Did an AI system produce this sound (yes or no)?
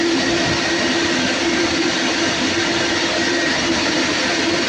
yes